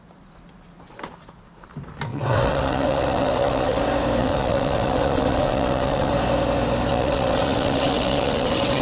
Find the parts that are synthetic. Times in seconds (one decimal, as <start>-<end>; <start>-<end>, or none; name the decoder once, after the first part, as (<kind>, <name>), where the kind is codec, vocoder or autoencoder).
2.1-3.8 (vocoder, WaveNeXt); 4.2-6.1; 6.9-8.8